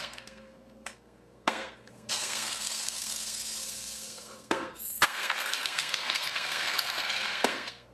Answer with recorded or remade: remade